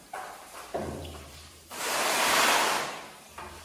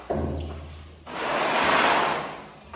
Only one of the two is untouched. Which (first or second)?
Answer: second